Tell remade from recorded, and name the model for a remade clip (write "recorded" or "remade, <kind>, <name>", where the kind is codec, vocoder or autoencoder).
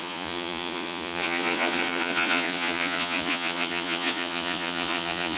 remade, vocoder, Vocos